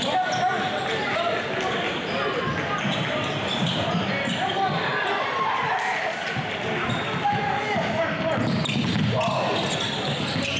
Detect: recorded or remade recorded